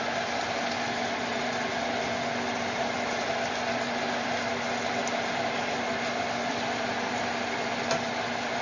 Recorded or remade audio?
recorded